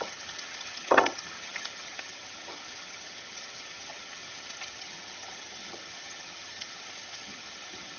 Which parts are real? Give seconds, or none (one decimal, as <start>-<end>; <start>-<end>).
none